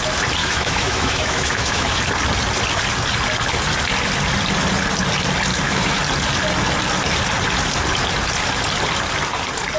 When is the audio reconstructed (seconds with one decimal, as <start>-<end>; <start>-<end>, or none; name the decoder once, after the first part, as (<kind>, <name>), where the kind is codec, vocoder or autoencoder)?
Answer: 0.4-2.0 (autoencoder, DAC-VAE); 5.5-6.0